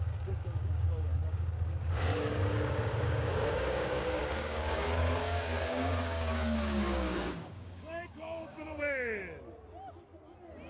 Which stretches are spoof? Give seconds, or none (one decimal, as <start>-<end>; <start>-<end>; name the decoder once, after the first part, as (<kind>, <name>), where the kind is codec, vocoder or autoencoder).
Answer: 0.0-9.2 (codec, DAC)